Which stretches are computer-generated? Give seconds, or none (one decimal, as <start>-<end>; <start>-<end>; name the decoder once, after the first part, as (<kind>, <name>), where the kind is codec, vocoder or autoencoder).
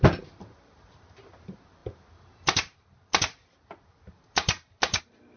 none